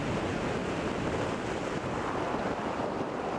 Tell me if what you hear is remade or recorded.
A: remade